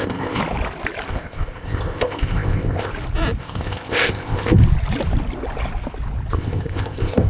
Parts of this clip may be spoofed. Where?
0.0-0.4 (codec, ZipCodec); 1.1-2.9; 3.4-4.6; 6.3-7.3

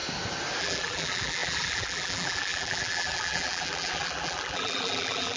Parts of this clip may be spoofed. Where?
0.6-5.4 (vocoder, BigVGAN v2)

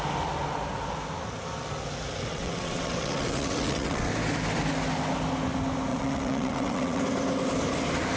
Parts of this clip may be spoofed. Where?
2.3-4.1 (vocoder, WaveNeXt); 5.9-7.0

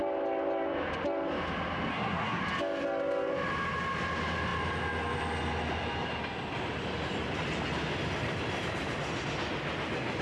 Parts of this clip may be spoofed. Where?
1.9-2.4 (codec, SNAC)